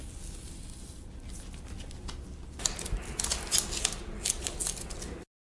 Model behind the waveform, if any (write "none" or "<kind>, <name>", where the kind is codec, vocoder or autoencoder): none